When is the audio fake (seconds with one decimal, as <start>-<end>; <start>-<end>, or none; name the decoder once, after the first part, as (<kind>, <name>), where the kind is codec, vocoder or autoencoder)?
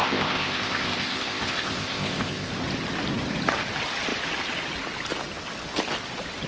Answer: 0.0-2.5 (codec, ZipCodec)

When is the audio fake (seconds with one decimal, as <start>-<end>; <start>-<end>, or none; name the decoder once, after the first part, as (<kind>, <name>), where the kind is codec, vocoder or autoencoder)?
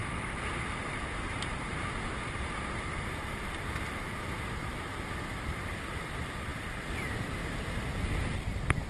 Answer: 0.0-8.9 (vocoder, BigVGAN v2)